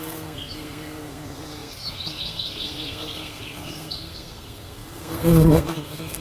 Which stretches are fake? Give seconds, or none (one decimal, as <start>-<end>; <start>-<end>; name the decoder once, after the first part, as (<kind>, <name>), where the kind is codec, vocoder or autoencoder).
0.0-6.2 (codec, SNAC)